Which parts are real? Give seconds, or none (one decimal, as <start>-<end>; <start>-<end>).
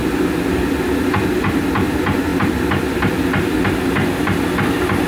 1.4-5.1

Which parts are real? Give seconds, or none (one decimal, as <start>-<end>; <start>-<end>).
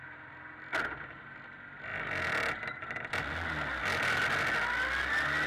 0.0-5.5